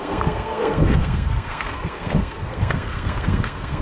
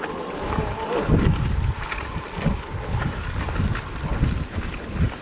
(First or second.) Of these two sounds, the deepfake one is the first